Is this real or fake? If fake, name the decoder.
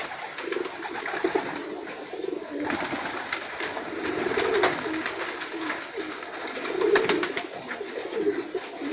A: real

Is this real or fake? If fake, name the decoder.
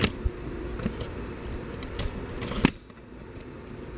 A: real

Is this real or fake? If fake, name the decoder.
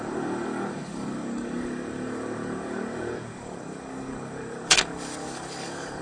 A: fake, codec, DAC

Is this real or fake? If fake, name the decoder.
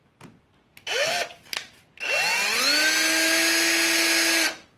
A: real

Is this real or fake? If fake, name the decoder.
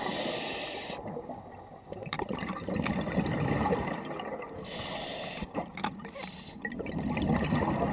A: real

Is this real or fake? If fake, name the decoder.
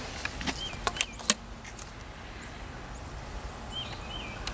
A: real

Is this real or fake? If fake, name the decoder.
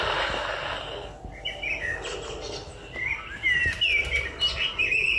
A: real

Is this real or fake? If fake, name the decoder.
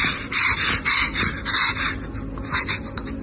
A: real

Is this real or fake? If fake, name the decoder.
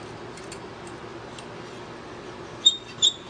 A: real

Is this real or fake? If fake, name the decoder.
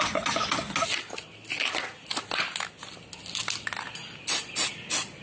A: real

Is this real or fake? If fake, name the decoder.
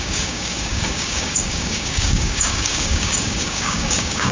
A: fake, codec, DAC